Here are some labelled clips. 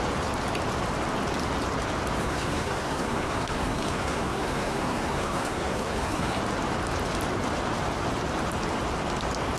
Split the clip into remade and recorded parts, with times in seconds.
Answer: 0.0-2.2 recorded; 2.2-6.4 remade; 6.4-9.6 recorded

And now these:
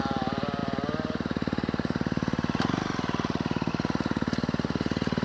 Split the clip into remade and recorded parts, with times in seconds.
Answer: 0.0-5.2 recorded

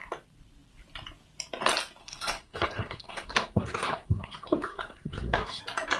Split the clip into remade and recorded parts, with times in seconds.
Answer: 0.0-2.0 recorded; 2.0-5.6 remade; 5.6-6.0 recorded

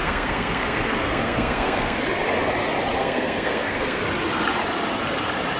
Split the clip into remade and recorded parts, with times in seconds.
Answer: 0.0-2.0 remade; 2.0-3.0 recorded; 3.0-4.0 remade; 4.0-5.6 recorded

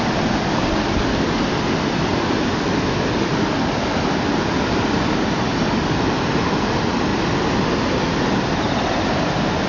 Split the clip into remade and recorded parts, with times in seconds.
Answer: 0.0-9.7 recorded

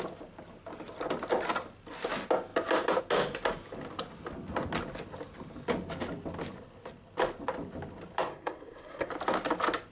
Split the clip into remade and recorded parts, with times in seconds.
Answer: 0.0-8.3 recorded; 8.3-9.1 remade; 9.1-9.9 recorded

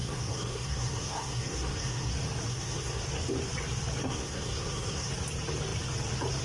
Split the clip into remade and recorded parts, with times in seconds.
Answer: 0.0-2.1 remade; 2.1-2.5 recorded; 2.5-3.0 remade; 3.0-4.0 recorded; 4.0-5.1 remade; 5.1-6.4 recorded